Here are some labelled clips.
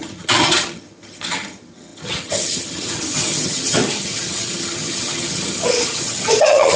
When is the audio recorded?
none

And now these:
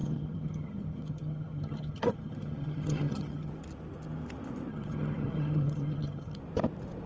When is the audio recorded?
3.5-4.7; 6.4-7.1